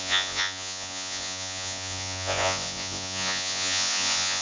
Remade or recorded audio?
remade